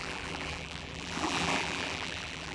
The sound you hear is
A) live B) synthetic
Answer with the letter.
B